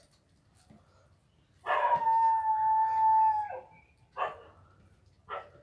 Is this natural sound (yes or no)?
yes